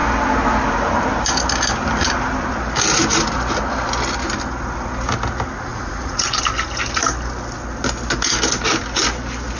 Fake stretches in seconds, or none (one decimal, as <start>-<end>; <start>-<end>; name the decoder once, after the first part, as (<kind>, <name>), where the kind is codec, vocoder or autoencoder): 5.7-6.4 (vocoder, Vocos)